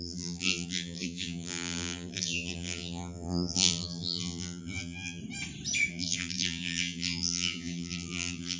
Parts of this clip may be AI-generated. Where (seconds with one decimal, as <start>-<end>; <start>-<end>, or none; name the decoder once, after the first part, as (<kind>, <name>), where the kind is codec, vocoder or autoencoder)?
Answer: 0.0-5.2 (vocoder, BigVGAN v2); 5.9-8.6